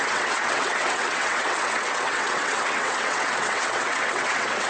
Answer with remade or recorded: remade